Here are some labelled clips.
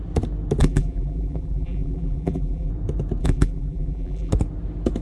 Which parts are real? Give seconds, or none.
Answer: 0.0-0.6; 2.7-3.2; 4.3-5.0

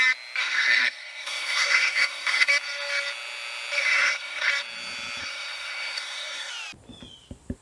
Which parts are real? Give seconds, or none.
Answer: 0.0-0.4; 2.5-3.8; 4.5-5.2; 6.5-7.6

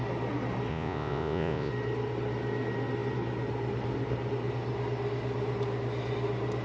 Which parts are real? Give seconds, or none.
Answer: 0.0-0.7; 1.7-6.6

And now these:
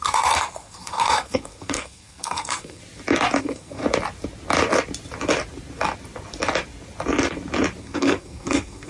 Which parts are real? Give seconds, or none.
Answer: 2.8-3.4; 3.8-7.8

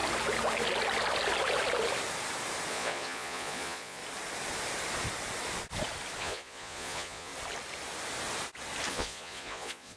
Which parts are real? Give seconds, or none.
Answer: 0.0-2.7; 4.0-6.2; 7.3-8.9